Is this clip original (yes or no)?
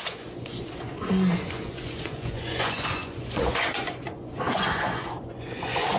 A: no